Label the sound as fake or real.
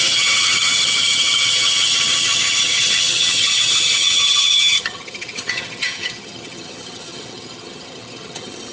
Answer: fake